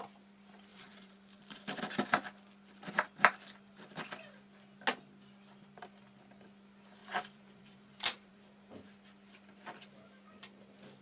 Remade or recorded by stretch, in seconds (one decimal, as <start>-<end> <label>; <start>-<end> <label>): 0.0-0.7 recorded; 0.7-1.8 remade; 1.8-7.0 recorded; 7.0-8.7 remade; 8.7-11.0 recorded